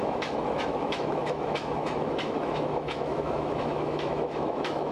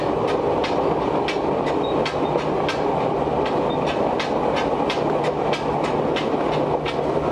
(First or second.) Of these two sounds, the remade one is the first